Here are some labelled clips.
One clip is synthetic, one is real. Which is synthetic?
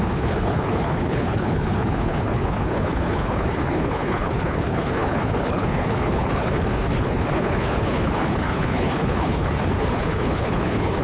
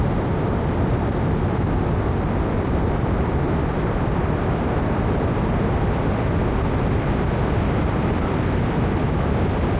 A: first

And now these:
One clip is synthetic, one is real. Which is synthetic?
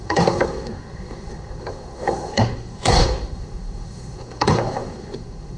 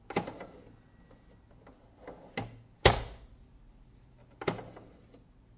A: first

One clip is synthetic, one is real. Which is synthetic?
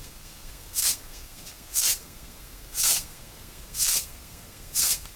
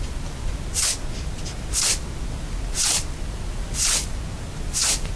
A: first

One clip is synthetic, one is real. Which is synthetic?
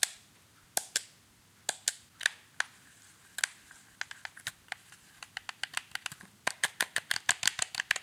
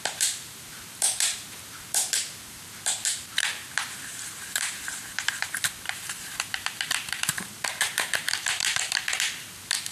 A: second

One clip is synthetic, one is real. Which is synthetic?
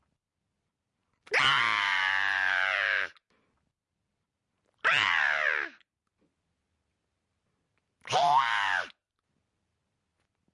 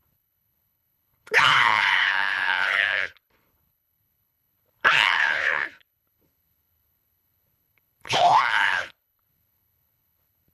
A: second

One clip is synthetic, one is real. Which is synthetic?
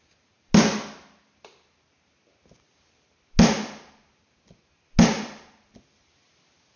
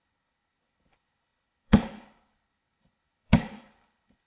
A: second